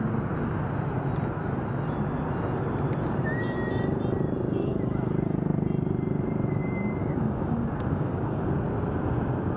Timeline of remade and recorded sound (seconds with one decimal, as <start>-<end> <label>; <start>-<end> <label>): 0.0-7.0 recorded; 7.0-8.5 remade; 8.5-9.6 recorded